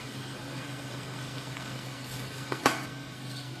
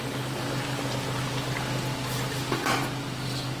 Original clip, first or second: second